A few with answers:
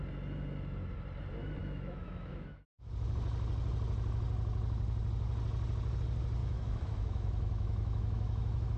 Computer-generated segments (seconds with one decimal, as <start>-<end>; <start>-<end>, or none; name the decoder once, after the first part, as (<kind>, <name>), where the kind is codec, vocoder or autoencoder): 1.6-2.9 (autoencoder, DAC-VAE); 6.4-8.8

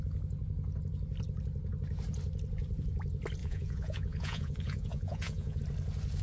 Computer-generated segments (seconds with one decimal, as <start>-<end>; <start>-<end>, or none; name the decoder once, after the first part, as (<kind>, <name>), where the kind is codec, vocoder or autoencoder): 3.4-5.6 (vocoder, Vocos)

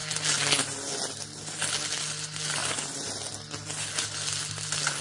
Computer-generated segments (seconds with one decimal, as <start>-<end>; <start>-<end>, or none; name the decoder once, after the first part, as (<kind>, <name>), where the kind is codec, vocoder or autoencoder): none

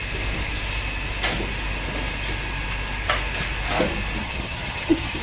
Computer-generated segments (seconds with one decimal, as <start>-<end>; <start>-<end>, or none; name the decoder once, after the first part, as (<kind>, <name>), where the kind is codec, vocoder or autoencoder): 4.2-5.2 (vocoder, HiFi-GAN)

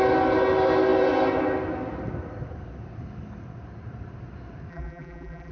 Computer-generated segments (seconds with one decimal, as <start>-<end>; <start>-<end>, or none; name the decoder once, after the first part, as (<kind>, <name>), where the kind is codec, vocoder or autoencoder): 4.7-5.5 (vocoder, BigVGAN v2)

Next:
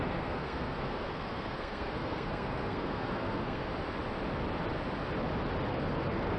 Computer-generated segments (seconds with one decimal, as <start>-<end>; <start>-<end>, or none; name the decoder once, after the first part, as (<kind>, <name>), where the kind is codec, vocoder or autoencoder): 0.0-3.7 (codec, SNAC); 5.7-6.4